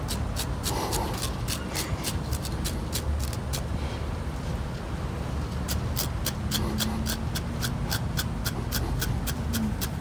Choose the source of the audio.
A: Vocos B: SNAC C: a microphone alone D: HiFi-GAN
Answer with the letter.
C